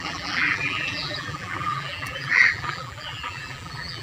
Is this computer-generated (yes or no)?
yes